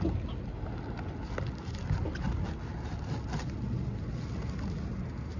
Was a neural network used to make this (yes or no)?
no